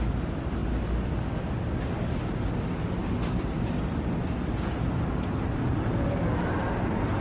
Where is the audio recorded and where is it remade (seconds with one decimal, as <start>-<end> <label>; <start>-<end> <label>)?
0.0-7.2 recorded